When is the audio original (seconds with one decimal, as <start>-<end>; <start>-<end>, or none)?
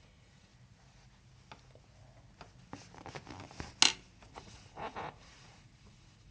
0.5-4.3